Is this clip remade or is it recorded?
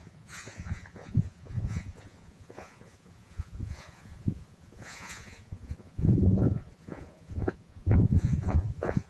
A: remade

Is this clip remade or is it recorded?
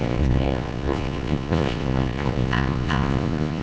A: remade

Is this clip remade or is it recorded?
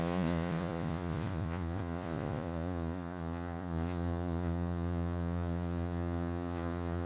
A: remade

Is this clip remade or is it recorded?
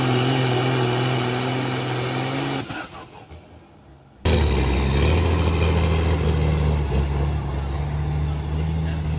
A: recorded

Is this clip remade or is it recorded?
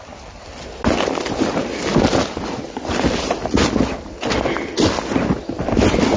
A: recorded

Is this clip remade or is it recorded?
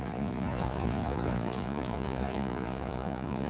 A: remade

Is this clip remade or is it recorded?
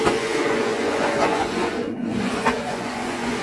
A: remade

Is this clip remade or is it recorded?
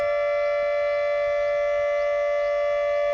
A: recorded